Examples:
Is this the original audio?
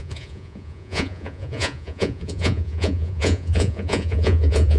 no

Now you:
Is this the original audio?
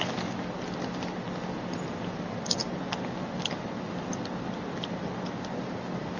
yes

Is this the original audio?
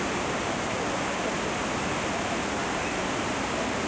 yes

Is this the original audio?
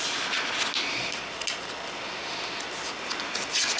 yes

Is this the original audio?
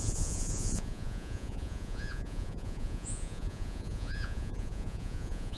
no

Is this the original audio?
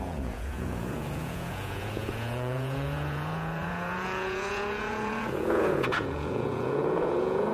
no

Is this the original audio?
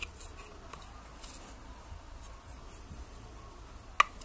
yes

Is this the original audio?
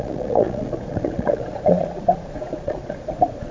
no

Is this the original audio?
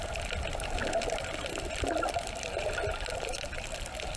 yes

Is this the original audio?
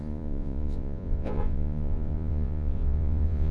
no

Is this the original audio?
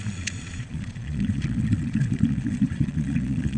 no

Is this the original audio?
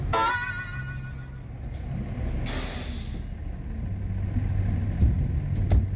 yes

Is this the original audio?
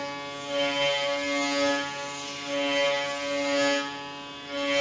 yes